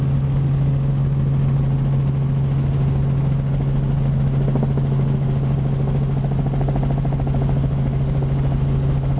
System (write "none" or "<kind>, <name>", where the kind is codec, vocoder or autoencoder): none